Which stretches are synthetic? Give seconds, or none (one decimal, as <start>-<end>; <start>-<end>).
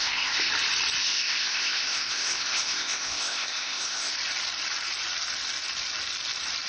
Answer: 0.0-0.5; 1.0-4.1